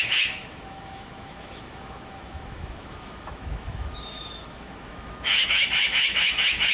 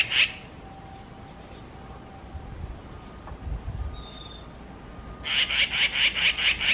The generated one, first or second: first